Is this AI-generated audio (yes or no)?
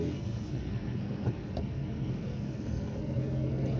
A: yes